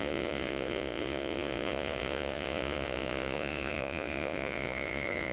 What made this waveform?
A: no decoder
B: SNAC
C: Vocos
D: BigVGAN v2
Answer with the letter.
C